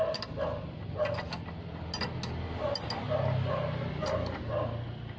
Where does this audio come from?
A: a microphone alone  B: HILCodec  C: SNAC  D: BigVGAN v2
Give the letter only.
A